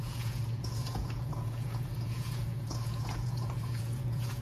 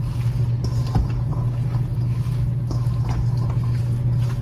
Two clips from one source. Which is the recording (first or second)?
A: second